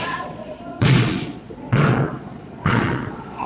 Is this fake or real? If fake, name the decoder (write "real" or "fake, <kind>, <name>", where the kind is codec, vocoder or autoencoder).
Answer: fake, vocoder, Vocos